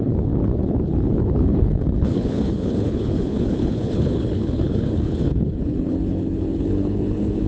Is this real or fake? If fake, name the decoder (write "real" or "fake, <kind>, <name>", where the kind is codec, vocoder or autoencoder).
fake, codec, HILCodec